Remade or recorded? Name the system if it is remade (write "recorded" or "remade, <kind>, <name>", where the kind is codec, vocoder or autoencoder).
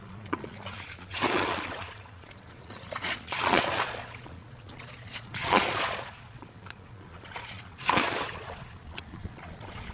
remade, vocoder, Vocos